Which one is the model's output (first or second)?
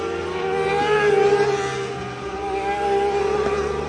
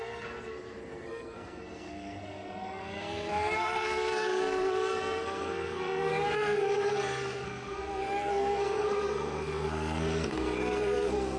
second